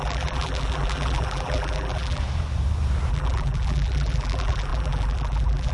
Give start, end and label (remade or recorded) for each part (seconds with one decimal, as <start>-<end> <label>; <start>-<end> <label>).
0.0-2.2 remade; 2.2-3.1 recorded; 3.1-5.7 remade